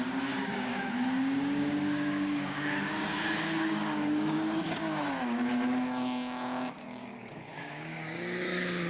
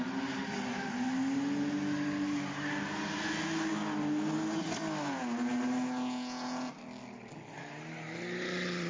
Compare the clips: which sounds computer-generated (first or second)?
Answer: first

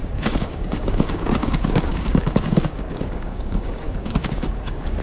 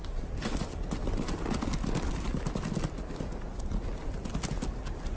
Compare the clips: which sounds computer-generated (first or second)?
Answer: first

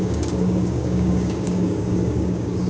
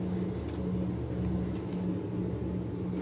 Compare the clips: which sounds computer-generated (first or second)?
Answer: first